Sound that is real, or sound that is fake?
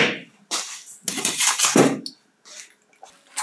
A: real